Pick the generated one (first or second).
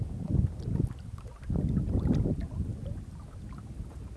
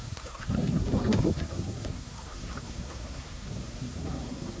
second